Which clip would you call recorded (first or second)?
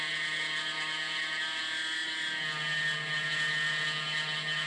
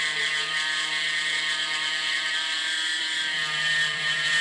first